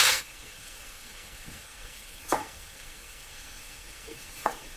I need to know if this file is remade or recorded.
remade